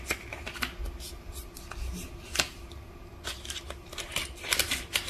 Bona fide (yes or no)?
yes